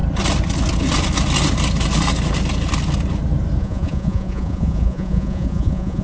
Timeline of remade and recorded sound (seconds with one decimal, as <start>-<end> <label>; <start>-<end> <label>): 0.0-3.6 recorded; 3.6-6.0 remade